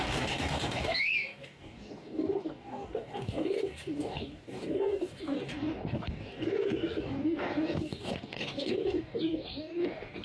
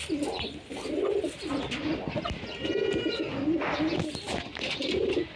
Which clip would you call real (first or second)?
second